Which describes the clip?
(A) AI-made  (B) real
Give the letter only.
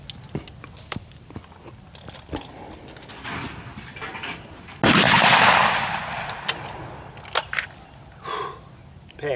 B